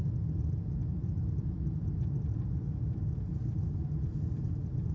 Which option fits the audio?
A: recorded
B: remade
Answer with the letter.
B